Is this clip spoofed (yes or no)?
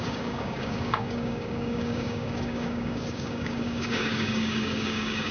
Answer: yes